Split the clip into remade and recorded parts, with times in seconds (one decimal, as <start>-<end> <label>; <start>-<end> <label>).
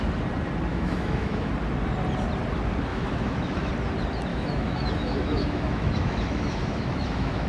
0.0-0.7 recorded; 0.7-1.5 remade; 1.5-2.9 recorded; 2.9-3.7 remade; 3.7-4.3 recorded; 4.3-7.5 remade